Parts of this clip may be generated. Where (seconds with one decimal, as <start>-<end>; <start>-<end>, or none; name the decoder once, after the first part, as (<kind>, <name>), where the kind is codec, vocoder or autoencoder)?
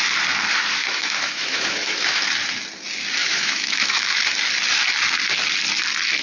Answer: 0.8-2.2 (autoencoder, DAC-VAE); 3.2-4.2